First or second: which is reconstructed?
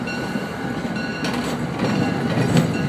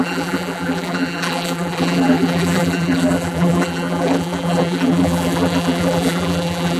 second